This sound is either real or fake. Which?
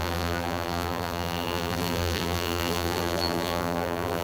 fake